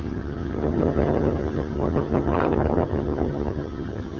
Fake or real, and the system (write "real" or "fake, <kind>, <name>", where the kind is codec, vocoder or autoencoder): fake, vocoder, HiFi-GAN